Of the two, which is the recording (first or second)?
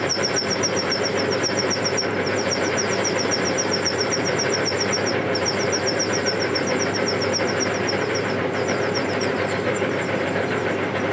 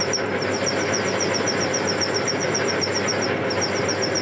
second